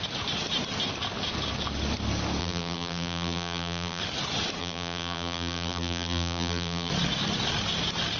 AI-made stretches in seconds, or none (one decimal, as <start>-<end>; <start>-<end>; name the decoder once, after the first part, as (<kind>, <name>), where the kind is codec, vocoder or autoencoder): 2.4-4.0 (vocoder, BigVGAN v2); 4.6-6.9

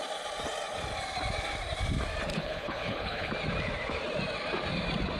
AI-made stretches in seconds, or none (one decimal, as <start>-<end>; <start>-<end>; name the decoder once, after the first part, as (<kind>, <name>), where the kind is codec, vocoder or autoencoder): 2.3-3.3 (codec, HILCodec)